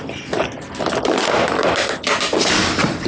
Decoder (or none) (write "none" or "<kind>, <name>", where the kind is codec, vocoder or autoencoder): vocoder, BigVGAN v2